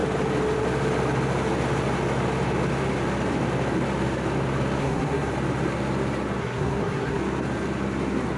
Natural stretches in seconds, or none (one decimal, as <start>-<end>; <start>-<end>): 0.0-4.8; 5.3-6.4; 7.2-8.4